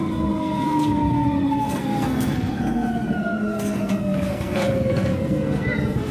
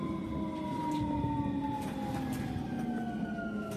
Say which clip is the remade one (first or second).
first